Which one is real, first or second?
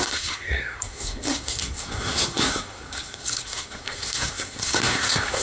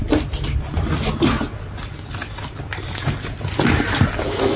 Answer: second